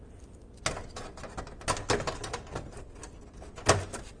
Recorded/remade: recorded